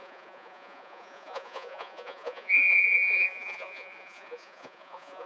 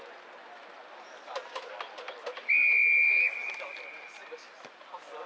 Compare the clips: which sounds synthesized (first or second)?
first